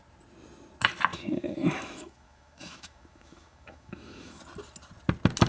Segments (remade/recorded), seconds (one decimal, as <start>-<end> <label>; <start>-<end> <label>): 0.0-1.1 recorded; 1.1-4.4 remade; 4.4-5.5 recorded

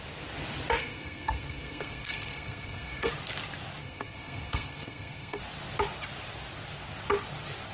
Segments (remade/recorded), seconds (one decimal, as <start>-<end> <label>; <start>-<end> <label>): 0.0-0.8 recorded; 0.8-3.1 remade; 3.1-3.8 recorded; 3.8-5.4 remade; 5.4-7.7 recorded

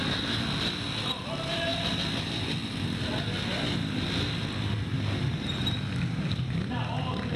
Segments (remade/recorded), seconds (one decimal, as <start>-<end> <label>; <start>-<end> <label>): 0.0-7.4 recorded

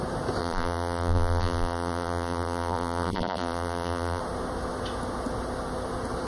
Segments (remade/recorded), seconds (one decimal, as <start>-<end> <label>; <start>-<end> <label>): 0.0-0.4 recorded; 0.4-4.2 remade; 4.2-6.3 recorded

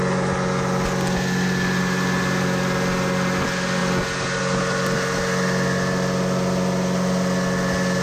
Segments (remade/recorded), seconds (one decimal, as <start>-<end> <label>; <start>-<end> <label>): 0.0-8.0 recorded

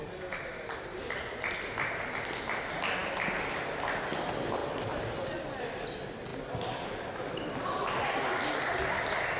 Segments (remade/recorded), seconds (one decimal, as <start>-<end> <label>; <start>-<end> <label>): 0.0-4.6 recorded; 4.6-5.6 remade; 5.6-9.4 recorded

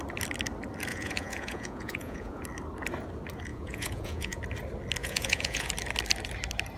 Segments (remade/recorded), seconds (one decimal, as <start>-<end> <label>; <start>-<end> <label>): 0.0-0.9 recorded; 0.9-2.4 remade; 2.4-3.5 recorded; 3.5-4.4 remade; 4.4-5.0 recorded; 5.0-5.7 remade; 5.7-6.8 recorded

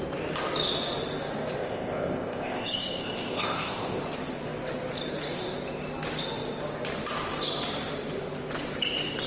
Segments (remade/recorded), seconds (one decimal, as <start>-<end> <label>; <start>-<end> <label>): 0.0-1.6 recorded; 1.6-4.0 remade; 4.0-9.3 recorded